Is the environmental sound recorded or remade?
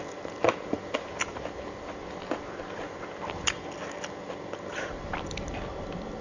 recorded